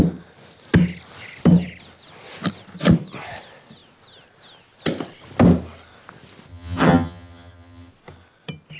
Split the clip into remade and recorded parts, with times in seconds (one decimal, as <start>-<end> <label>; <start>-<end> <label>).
0.0-6.5 recorded; 6.5-7.9 remade; 7.9-8.8 recorded